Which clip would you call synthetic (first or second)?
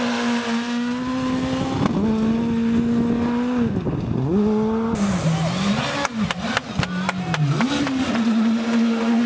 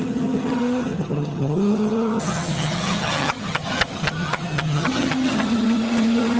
second